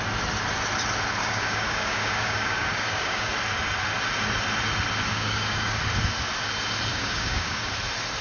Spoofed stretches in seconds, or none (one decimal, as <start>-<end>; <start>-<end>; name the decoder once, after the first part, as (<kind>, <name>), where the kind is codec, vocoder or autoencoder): 1.2-3.3 (codec, DAC); 5.1-5.8; 6.9-7.7